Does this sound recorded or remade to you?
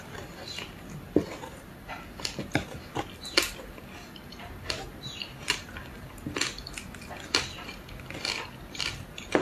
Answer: recorded